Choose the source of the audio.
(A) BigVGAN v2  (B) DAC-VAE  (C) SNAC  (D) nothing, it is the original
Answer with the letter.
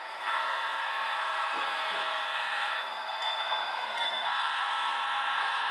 C